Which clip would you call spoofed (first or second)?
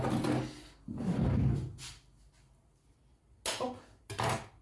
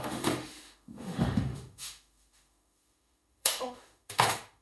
second